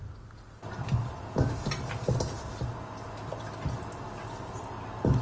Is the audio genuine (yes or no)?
yes